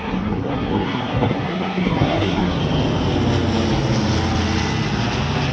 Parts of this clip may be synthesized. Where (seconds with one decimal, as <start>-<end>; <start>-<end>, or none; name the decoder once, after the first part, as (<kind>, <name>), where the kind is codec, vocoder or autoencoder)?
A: 0.0-2.6 (codec, SNAC)